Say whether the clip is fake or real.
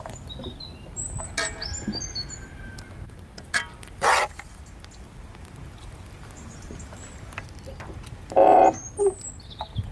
real